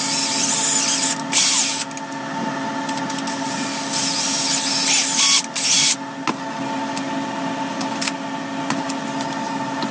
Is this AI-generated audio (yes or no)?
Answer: no